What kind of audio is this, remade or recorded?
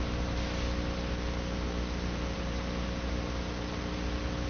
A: recorded